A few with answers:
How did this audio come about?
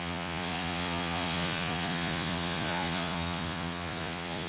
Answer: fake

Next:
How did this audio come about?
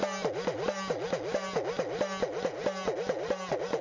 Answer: real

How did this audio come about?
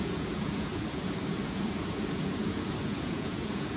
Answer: fake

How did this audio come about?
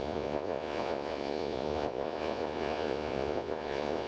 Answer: fake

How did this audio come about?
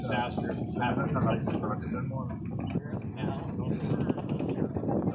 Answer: real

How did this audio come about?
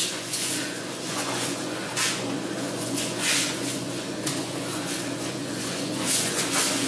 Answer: fake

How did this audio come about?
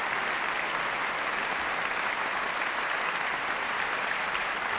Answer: real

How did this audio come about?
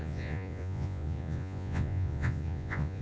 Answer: fake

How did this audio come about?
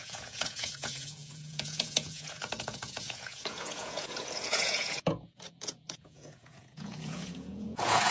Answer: fake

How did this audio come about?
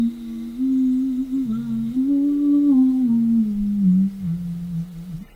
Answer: real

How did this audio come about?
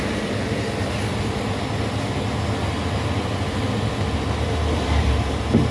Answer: real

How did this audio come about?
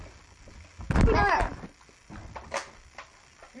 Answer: real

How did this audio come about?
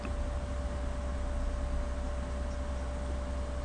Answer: real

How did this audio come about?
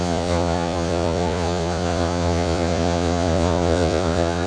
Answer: fake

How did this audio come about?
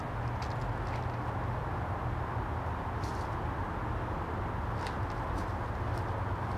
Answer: real